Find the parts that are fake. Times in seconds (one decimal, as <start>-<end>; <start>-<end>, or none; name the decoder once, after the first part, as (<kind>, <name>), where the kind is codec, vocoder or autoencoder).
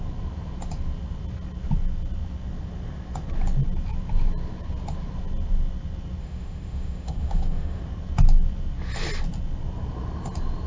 6.2-7.8 (autoencoder, DAC-VAE)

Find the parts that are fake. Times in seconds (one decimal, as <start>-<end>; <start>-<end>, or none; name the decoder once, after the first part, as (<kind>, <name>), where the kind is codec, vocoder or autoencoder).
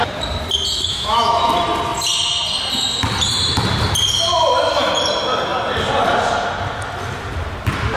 0.9-1.5 (autoencoder, DAC-VAE)